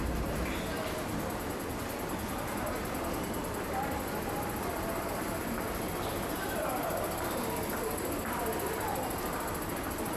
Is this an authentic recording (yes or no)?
yes